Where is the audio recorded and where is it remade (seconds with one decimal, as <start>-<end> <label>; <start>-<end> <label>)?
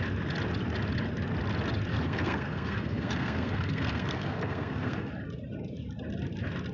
0.0-1.9 recorded; 1.9-5.1 remade; 5.1-6.7 recorded